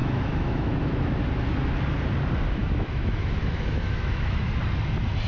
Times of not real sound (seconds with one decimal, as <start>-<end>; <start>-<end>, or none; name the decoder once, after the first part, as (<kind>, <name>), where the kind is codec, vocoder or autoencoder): 0.0-1.2 (autoencoder, DAC-VAE); 2.6-4.4